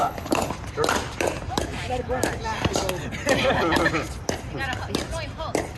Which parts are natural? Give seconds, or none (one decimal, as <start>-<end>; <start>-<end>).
0.5-5.8